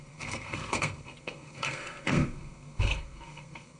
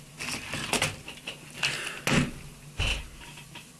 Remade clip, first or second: first